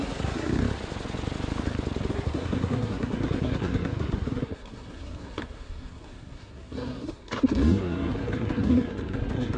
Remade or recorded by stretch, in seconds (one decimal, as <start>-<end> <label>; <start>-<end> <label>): 0.0-0.6 remade; 0.6-2.1 recorded; 2.1-9.6 remade